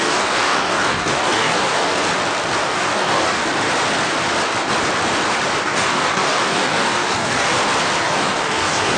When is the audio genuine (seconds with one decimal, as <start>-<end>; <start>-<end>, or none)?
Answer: 2.0-2.6; 3.4-5.6; 7.5-8.0